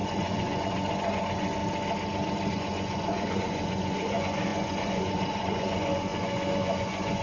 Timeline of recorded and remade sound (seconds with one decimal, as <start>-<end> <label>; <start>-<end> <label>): 0.0-1.6 remade; 1.6-2.5 recorded; 2.5-7.2 remade